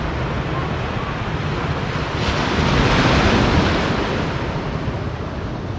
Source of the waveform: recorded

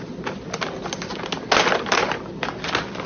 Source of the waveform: recorded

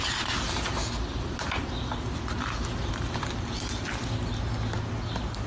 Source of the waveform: recorded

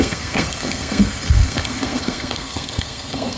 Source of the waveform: remade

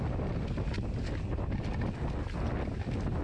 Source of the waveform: recorded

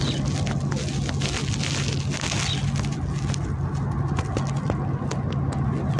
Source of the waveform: recorded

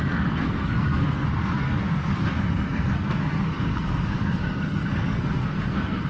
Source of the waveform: remade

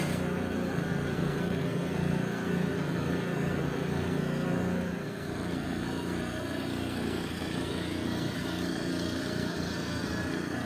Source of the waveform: remade